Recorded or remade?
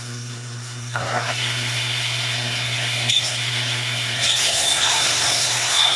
remade